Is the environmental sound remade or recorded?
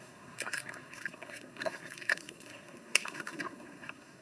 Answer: remade